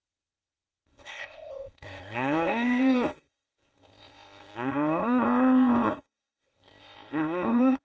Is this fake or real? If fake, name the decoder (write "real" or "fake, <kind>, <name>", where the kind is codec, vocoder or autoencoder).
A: fake, codec, ZipCodec